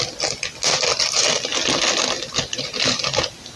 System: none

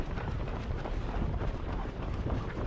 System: vocoder, BigVGAN v2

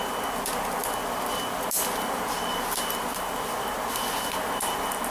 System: none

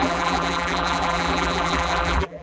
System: vocoder, BigVGAN v2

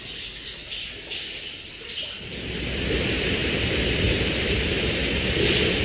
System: none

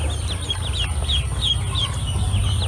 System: none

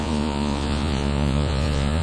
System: vocoder, Vocos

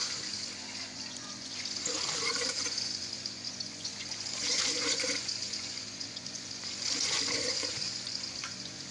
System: vocoder, Vocos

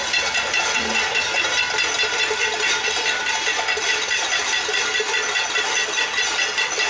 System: none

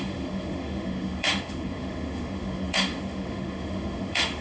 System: autoencoder, DAC-VAE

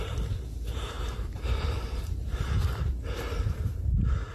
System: vocoder, BigVGAN v2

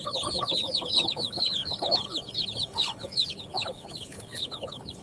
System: codec, HILCodec